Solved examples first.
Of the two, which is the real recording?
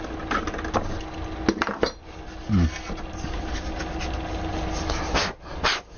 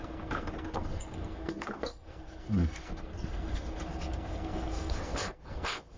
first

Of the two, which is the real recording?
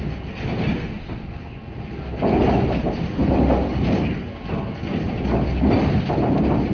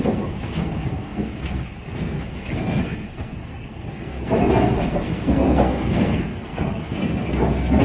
first